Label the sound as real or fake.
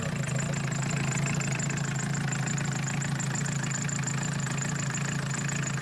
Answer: real